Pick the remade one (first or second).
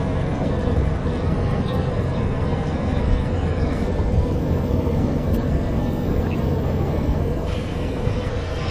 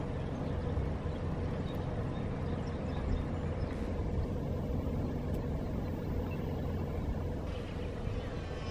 first